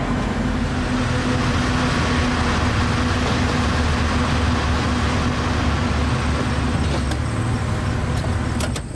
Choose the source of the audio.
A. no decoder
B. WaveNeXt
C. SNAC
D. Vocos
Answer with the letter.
A